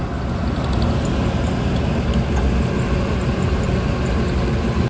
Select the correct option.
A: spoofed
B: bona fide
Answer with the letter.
B